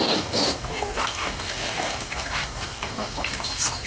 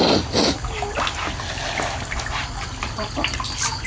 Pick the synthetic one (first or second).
first